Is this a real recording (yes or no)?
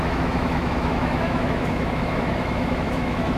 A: no